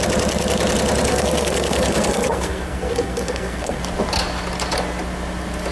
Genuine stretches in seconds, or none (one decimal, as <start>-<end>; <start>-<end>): 0.0-1.1; 3.8-5.7